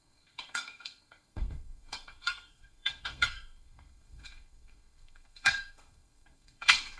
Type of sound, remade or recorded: remade